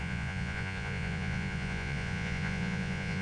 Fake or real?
fake